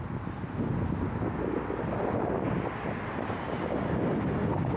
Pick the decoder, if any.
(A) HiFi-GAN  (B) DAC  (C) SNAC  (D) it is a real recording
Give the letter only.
D